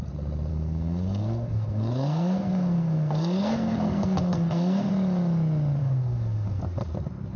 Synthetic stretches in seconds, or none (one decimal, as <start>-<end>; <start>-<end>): 0.5-4.9; 5.8-6.6